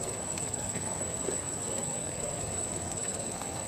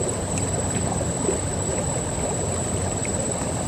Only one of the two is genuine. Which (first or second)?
second